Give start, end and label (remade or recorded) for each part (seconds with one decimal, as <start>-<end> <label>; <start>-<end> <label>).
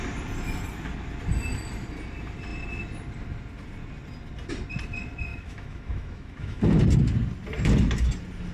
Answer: 0.0-5.3 recorded; 5.3-6.6 remade; 6.6-8.5 recorded